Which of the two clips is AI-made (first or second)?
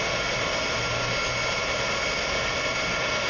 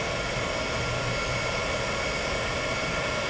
second